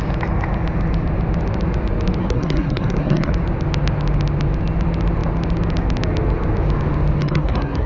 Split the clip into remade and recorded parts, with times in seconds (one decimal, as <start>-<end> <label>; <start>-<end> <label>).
0.0-2.2 recorded; 2.2-3.3 remade; 3.3-7.2 recorded; 7.2-7.9 remade